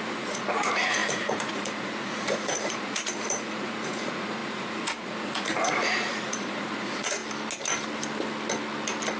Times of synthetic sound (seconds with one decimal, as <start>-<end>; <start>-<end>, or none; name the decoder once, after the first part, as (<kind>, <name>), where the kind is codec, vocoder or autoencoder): 0.0-7.2 (vocoder, Vocos)